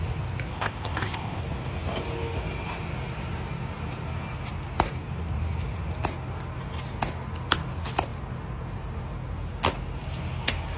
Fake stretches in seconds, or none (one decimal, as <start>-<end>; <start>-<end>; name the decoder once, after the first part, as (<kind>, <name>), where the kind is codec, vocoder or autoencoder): 0.5-1.4 (codec, ZipCodec)